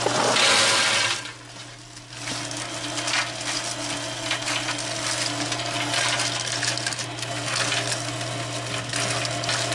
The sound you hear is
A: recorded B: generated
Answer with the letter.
A